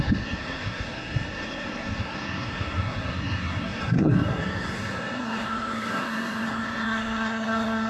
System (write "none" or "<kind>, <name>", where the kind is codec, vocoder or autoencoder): codec, SNAC